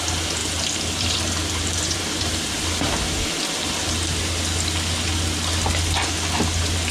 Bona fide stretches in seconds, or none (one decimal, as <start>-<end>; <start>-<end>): 0.0-0.4; 2.3-6.9